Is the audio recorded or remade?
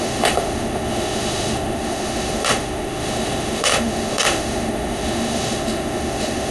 remade